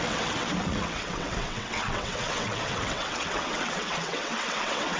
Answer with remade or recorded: remade